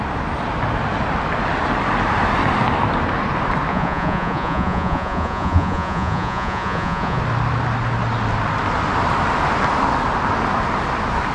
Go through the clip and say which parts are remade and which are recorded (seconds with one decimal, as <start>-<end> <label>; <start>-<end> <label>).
0.0-3.7 recorded; 3.7-7.2 remade; 7.2-11.3 recorded